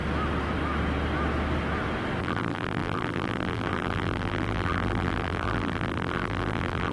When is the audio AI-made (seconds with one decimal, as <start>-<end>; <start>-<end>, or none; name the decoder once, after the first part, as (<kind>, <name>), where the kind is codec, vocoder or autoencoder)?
2.2-6.9 (vocoder, BigVGAN v2)